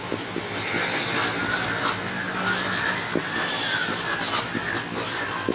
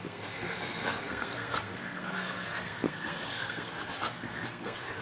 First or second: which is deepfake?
second